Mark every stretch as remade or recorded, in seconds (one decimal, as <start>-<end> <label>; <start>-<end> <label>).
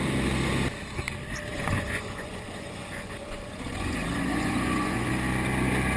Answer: 0.0-1.5 recorded; 1.5-5.1 remade; 5.1-6.0 recorded